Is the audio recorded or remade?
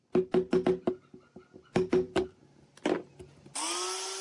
recorded